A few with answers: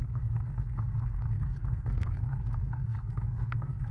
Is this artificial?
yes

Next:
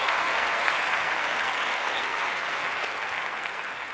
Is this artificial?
yes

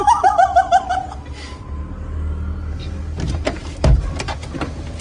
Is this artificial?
no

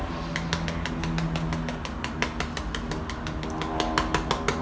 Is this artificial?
no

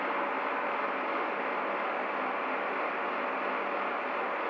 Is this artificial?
no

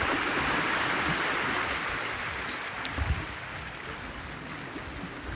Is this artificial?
no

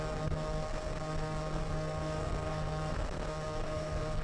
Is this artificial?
yes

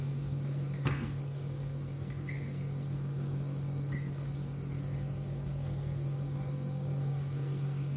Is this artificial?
yes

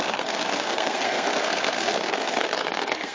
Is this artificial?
yes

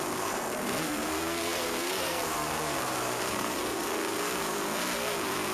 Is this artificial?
yes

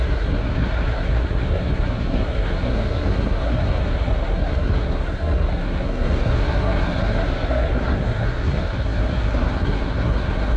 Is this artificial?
yes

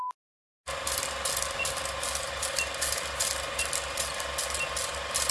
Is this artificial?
no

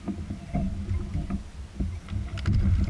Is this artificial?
no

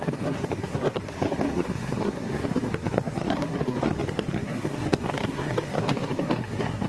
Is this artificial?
yes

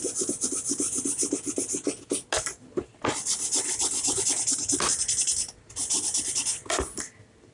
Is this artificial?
no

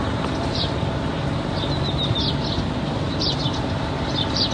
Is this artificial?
no